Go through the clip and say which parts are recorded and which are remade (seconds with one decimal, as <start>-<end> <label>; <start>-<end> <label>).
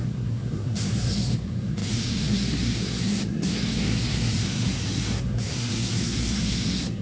0.0-7.0 remade